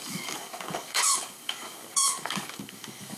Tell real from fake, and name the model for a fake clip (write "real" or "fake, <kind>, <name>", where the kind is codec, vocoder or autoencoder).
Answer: fake, codec, DAC